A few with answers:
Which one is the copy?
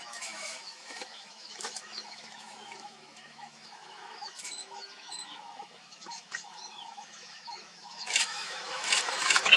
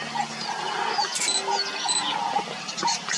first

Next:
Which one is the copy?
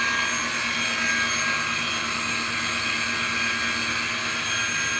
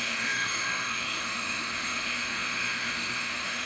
second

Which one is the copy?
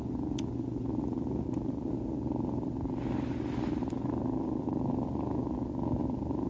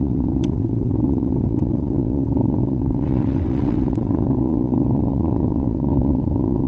second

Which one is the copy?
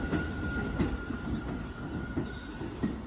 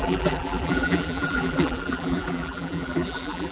second